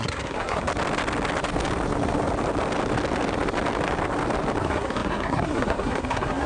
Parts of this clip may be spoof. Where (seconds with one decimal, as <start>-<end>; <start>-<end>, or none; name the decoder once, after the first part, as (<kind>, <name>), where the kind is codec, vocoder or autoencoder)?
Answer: 0.0-0.7 (codec, SNAC); 4.6-6.5